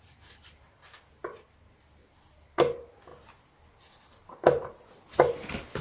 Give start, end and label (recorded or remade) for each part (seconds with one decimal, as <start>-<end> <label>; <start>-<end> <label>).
0.0-5.8 recorded